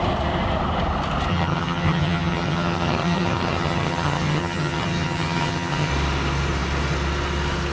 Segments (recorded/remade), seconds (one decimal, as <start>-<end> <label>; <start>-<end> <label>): 0.0-1.3 recorded; 1.3-5.9 remade; 5.9-7.7 recorded